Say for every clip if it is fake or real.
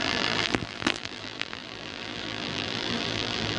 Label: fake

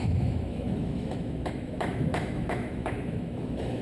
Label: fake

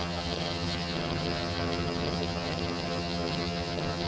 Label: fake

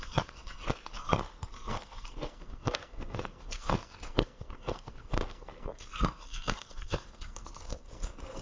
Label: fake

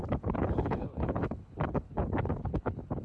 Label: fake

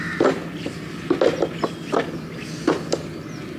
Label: real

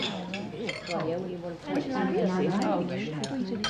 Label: real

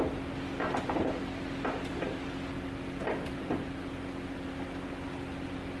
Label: real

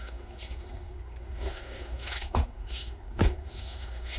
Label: fake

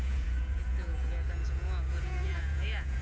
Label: fake